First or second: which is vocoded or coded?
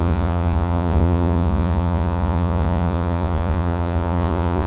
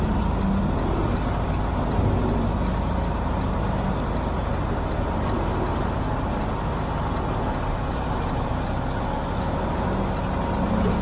first